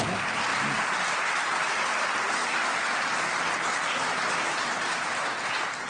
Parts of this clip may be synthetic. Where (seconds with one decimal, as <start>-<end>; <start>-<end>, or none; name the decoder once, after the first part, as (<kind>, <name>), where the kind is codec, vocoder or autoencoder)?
none

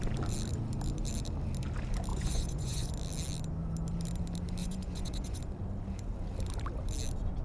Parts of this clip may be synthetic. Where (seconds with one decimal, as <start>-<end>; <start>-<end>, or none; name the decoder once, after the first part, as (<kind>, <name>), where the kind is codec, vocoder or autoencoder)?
2.1-2.9 (vocoder, Vocos); 4.6-5.4

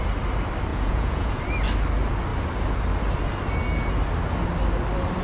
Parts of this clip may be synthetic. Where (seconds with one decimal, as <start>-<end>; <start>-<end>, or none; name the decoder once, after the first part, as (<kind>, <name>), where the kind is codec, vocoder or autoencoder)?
0.7-1.4 (vocoder, Vocos)

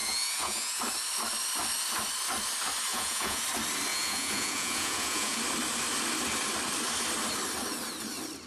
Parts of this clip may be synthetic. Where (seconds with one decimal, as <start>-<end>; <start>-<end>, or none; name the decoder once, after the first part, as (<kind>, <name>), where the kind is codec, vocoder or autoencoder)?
0.0-0.8 (vocoder, Vocos); 2.9-3.4; 3.9-5.4